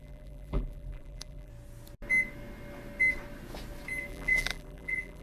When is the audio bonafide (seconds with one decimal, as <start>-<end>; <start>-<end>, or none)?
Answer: 1.5-4.1